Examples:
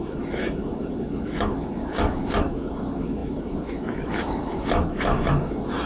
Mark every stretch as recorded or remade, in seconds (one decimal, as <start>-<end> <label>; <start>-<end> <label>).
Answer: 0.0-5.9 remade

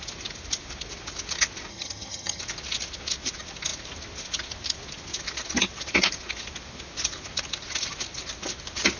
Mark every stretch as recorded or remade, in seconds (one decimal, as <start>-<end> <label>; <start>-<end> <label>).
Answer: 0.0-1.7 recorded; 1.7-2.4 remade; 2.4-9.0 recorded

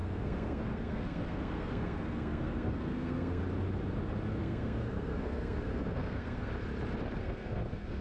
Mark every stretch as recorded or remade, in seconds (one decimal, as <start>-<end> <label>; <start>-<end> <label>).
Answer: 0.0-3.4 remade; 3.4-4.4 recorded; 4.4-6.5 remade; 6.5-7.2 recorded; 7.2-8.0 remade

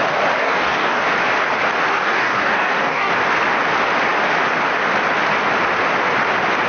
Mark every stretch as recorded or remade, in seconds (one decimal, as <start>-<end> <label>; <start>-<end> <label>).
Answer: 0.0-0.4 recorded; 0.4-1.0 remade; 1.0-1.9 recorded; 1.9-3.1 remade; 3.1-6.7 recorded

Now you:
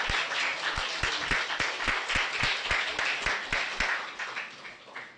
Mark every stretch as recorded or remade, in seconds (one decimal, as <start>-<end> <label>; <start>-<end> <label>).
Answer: 0.0-5.2 recorded

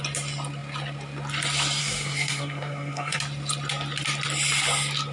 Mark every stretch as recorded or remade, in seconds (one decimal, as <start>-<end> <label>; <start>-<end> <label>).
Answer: 0.0-1.8 recorded; 1.8-3.2 remade; 3.2-5.1 recorded

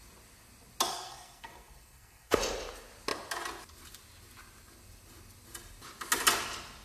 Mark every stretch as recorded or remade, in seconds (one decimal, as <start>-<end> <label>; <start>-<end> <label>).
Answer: 0.0-0.9 recorded; 0.9-2.4 remade; 2.4-6.8 recorded

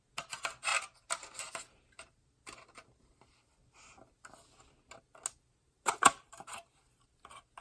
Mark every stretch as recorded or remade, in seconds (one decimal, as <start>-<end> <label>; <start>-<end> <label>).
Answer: 0.0-0.7 remade; 0.7-1.4 recorded; 1.4-3.6 remade; 3.6-5.6 recorded; 5.6-7.6 remade